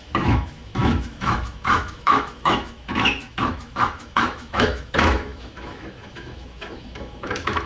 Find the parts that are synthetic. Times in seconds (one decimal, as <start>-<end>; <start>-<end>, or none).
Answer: 0.0-7.7